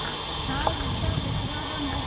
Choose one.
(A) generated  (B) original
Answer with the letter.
B